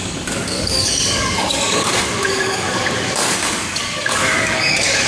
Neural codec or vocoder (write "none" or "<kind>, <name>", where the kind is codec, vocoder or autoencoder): codec, DAC